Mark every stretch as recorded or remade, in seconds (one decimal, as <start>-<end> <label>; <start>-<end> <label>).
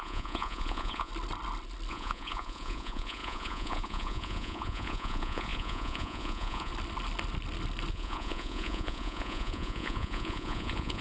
0.0-1.1 remade; 1.1-1.9 recorded; 1.9-6.7 remade; 6.7-7.9 recorded; 7.9-11.0 remade